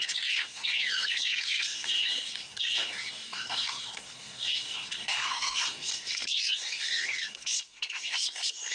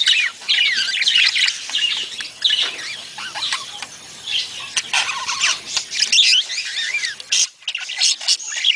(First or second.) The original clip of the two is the second